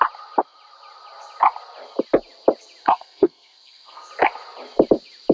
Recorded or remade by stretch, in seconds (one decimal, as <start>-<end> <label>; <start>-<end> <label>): 0.0-2.8 recorded; 2.8-4.1 remade; 4.1-5.3 recorded